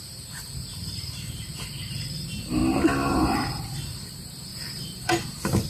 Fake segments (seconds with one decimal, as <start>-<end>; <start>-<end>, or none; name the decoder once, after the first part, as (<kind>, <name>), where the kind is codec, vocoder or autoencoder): 0.0-2.6 (vocoder, BigVGAN v2); 3.1-5.7